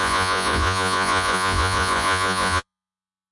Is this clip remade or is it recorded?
remade